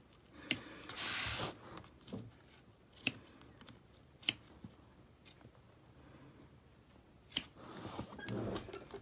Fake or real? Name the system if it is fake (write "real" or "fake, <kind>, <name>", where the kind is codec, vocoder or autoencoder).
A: real